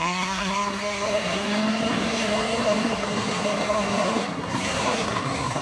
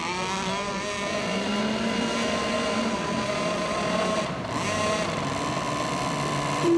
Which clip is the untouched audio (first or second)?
second